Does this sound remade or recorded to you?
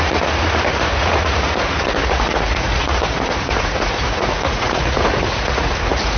remade